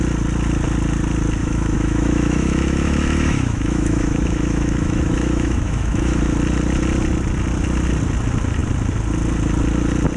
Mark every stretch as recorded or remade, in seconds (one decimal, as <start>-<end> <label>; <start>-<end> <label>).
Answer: 0.0-1.4 recorded; 1.4-6.2 remade; 6.2-10.2 recorded